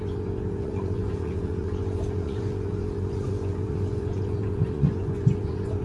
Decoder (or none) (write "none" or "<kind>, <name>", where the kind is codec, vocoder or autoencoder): vocoder, Vocos